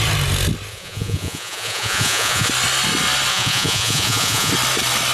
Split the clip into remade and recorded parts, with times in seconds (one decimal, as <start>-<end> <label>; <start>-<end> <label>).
0.0-0.7 recorded; 0.7-2.5 remade; 2.5-3.3 recorded; 3.3-4.5 remade; 4.5-5.1 recorded